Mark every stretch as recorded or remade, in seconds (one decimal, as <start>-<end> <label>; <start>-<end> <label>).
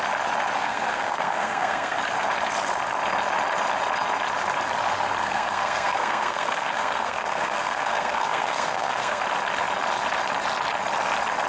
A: 0.0-0.6 recorded; 0.6-2.0 remade; 2.0-5.2 recorded; 5.2-9.2 remade; 9.2-11.5 recorded